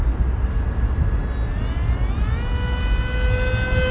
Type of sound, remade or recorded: recorded